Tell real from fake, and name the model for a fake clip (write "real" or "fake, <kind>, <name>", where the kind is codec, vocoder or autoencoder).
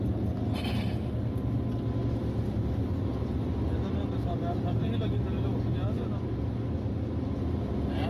real